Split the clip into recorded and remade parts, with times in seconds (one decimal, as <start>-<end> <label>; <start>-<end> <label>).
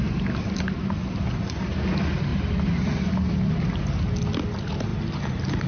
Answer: 0.0-5.7 recorded